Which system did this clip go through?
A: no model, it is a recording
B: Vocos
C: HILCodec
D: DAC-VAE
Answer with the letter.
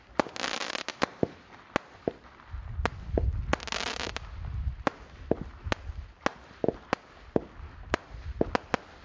A